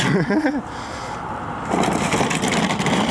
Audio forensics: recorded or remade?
recorded